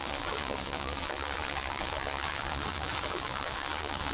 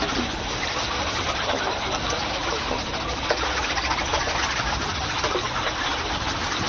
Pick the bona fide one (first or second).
second